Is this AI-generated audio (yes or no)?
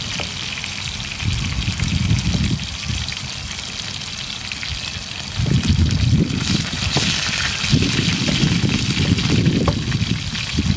no